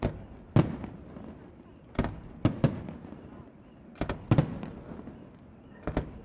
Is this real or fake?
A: real